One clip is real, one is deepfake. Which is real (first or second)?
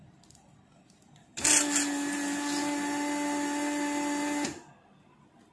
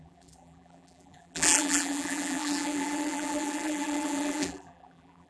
first